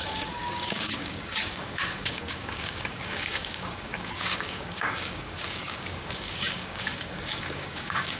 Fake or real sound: fake